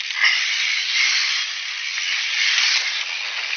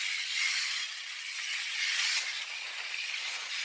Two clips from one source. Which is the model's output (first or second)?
second